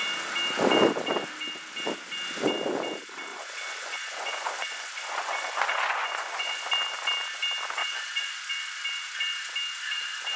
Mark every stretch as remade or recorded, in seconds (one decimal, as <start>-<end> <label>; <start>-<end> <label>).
0.0-3.3 recorded; 3.3-6.6 remade; 6.6-7.8 recorded; 7.8-8.5 remade; 8.5-10.4 recorded